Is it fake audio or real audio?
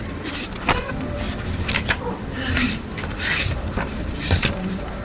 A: fake